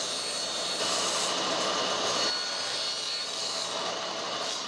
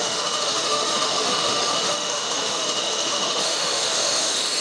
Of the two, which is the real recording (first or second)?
first